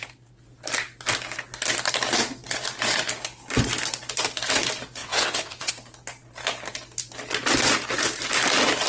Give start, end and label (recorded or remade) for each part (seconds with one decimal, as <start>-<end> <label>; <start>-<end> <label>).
0.0-5.0 recorded; 5.0-5.7 remade; 5.7-8.9 recorded